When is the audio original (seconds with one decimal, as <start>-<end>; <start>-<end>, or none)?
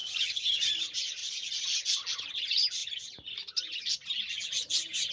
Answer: 0.7-5.1